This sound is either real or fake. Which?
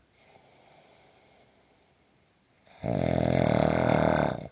real